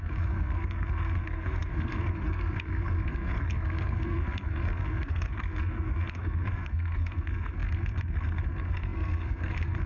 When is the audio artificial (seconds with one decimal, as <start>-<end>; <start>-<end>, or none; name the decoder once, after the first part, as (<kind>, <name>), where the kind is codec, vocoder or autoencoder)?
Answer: 0.0-9.9 (codec, SNAC)